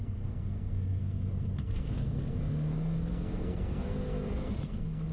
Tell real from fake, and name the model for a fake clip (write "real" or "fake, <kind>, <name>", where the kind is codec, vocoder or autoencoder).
fake, codec, SNAC